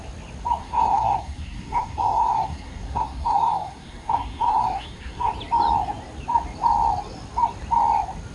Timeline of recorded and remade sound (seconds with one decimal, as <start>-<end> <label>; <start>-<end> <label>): 0.0-0.6 recorded; 0.6-5.3 remade; 5.3-8.3 recorded